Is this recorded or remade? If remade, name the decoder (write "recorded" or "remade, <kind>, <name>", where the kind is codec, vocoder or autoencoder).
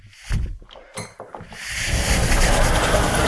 recorded